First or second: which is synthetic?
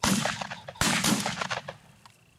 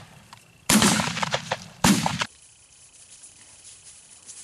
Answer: second